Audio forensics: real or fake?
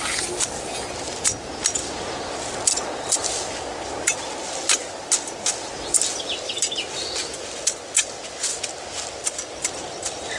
real